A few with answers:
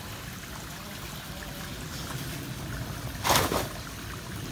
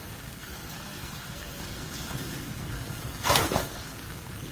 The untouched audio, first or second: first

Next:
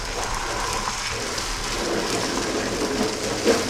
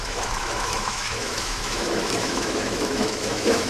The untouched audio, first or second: first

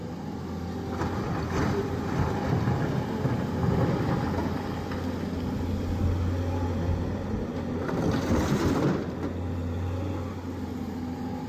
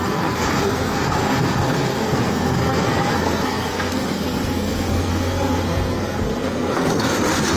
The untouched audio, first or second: first